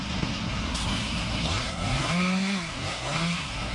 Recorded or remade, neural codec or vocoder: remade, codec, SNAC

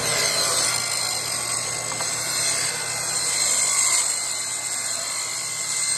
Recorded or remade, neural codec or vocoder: recorded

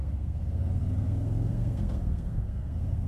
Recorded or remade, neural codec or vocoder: remade, codec, SNAC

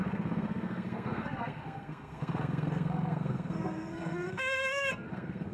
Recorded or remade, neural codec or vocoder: remade, codec, SNAC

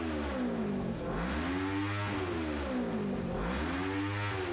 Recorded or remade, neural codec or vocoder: recorded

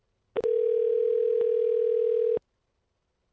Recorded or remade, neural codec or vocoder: recorded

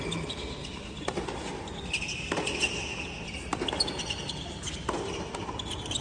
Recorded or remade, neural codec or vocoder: recorded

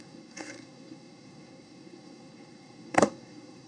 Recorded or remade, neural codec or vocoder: remade, codec, SNAC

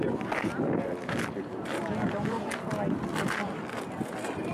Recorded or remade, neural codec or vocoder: recorded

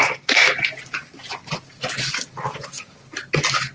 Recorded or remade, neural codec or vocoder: recorded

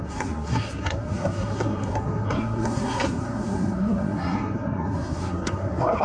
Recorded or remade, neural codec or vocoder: remade, codec, SNAC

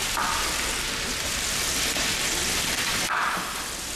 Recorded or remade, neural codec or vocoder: recorded